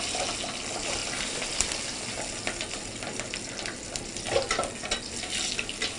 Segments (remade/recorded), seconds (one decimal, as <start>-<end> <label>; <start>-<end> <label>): 0.0-6.0 recorded